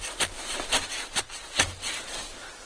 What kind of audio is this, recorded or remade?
recorded